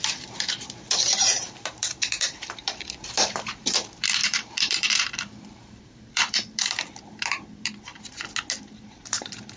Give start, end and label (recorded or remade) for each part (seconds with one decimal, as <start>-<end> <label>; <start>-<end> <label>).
0.0-7.9 remade; 7.9-8.6 recorded; 8.6-9.6 remade